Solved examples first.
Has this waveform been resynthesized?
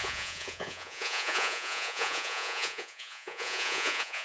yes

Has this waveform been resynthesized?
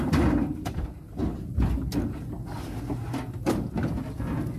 no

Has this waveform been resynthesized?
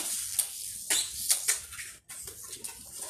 no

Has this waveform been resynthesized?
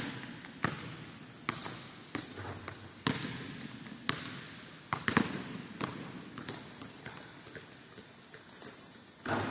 no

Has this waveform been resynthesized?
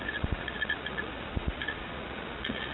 yes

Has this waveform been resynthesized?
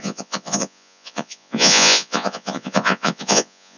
yes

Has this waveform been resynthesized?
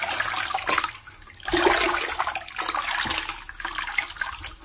no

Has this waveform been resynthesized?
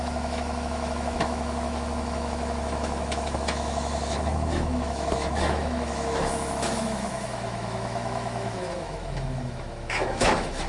yes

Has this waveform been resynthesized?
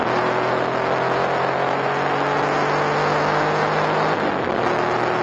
no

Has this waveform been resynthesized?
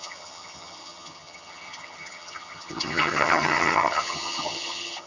yes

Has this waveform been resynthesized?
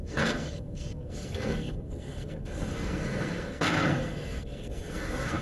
yes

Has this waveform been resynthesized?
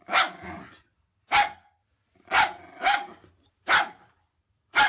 no